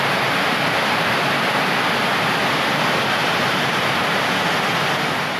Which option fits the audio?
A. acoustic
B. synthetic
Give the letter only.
A